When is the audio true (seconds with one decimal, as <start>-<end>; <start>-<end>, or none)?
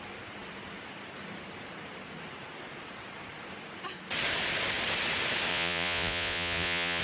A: 0.0-5.5